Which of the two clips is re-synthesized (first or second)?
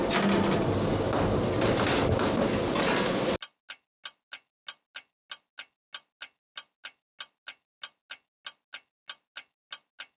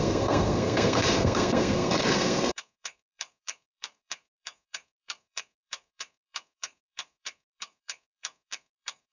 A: second